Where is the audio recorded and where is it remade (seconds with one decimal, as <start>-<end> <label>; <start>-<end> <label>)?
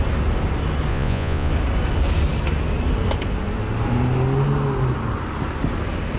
0.0-0.9 recorded; 0.9-1.5 remade; 1.5-6.2 recorded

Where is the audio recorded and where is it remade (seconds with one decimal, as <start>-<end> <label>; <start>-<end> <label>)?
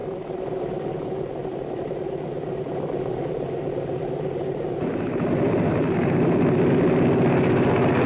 0.0-8.1 recorded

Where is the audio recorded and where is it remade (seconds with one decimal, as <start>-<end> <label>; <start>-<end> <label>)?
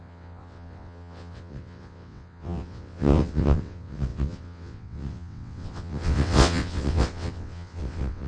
0.0-8.3 remade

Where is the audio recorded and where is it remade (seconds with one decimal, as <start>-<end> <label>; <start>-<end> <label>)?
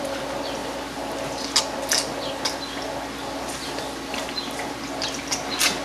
0.0-5.8 recorded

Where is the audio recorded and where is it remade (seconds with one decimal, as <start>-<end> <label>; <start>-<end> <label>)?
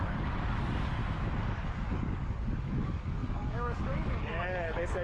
0.0-1.0 remade; 1.0-1.5 recorded; 1.5-5.0 remade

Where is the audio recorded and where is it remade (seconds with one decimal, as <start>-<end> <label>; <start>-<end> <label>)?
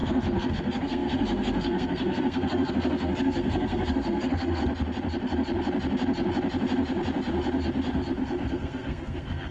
0.0-4.6 remade; 4.6-8.5 recorded; 8.5-9.5 remade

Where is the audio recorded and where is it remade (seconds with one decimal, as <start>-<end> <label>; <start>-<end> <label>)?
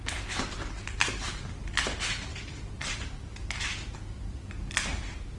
0.0-2.3 remade; 2.3-2.8 recorded; 2.8-3.3 remade; 3.3-4.7 recorded; 4.7-5.4 remade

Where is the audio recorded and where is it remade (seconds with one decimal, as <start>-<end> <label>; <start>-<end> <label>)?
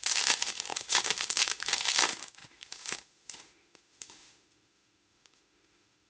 0.0-6.1 remade